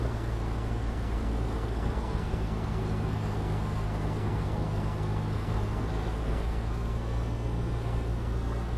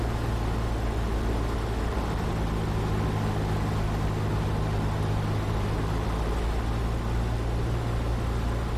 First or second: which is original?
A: second